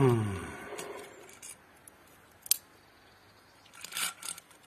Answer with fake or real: real